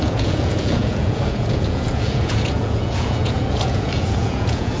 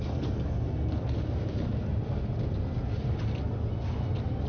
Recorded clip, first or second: second